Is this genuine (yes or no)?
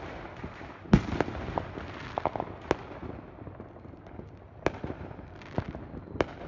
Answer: yes